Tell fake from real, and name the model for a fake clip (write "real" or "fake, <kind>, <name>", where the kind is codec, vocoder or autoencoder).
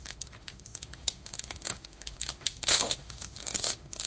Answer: fake, autoencoder, DAC-VAE